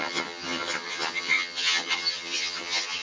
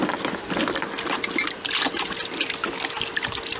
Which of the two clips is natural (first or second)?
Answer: second